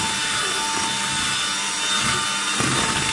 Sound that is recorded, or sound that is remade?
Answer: recorded